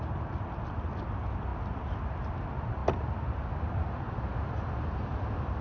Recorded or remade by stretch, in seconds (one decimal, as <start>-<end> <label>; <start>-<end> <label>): 0.0-5.6 recorded